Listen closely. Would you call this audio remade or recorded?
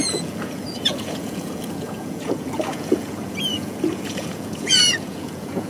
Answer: remade